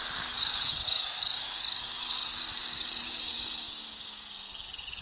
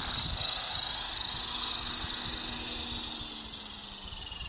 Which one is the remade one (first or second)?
first